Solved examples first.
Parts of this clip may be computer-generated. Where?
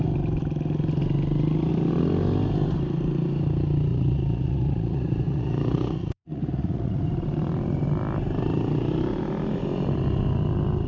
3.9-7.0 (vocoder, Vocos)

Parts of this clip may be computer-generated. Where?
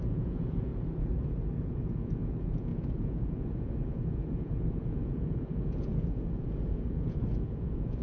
0.0-0.7 (vocoder, Vocos); 1.6-8.0